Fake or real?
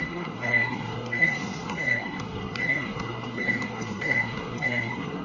fake